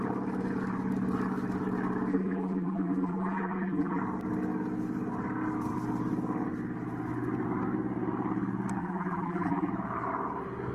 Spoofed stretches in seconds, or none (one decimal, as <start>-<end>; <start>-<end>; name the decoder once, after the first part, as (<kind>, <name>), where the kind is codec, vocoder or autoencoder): 2.1-4.0 (vocoder, BigVGAN v2); 8.8-9.7